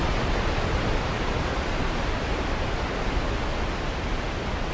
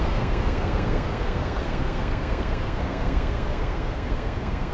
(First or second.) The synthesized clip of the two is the second